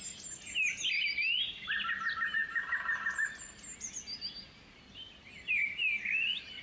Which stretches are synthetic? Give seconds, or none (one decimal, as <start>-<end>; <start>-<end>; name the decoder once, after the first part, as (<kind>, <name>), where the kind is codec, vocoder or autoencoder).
none